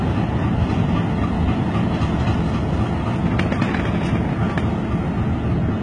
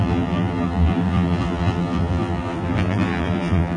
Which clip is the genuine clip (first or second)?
first